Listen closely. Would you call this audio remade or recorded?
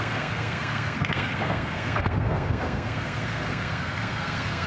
remade